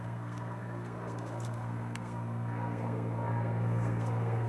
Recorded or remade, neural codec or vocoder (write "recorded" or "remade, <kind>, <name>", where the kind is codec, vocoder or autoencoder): remade, codec, SNAC